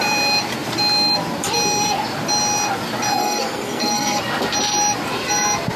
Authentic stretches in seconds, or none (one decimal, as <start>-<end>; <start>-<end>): 0.0-3.2; 4.2-5.8